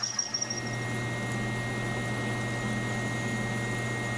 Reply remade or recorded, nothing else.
recorded